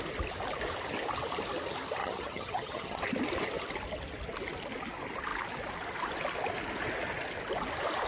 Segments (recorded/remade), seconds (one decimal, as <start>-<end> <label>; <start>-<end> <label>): 0.0-2.0 recorded; 2.0-3.0 remade; 3.0-8.1 recorded